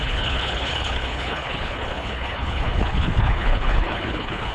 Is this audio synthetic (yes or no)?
yes